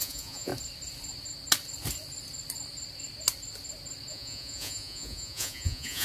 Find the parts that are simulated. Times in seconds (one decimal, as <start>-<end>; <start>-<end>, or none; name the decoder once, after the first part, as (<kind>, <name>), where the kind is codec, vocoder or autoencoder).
0.0-0.5 (vocoder, Vocos); 4.1-6.0